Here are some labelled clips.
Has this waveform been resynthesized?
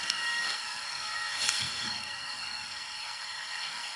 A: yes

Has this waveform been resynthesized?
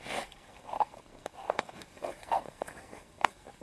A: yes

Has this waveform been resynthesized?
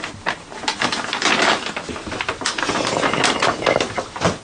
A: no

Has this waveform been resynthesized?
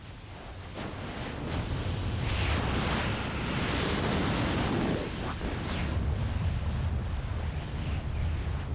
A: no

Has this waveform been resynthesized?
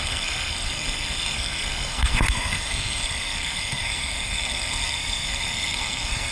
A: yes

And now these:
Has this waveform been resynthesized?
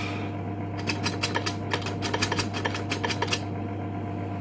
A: no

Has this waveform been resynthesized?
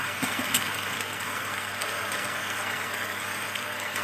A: yes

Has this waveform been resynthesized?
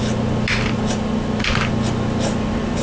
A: no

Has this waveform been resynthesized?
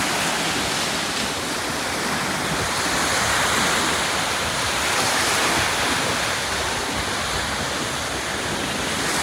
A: no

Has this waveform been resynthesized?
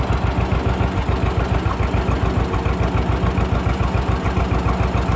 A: no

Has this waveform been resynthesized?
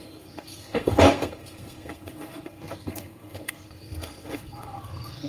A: yes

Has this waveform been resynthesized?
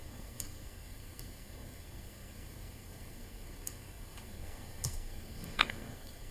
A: yes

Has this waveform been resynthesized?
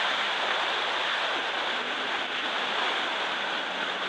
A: no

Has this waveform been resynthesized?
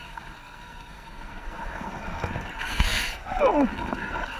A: yes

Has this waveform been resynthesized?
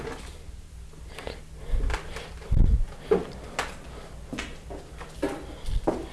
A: no